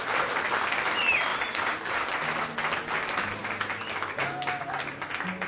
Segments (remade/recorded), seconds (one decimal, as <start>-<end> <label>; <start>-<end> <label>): 0.0-5.5 recorded